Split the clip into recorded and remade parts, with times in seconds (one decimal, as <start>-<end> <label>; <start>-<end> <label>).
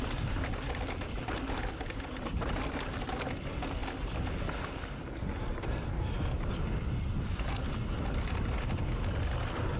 0.0-9.8 recorded